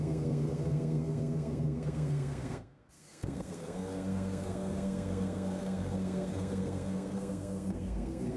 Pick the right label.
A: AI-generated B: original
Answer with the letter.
A